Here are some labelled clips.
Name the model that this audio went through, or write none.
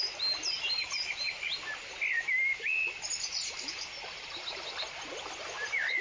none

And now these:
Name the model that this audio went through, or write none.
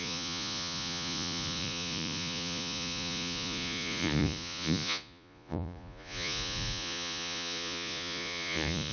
vocoder, Vocos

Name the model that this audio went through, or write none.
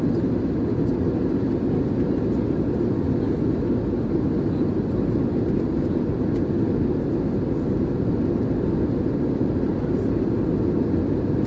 none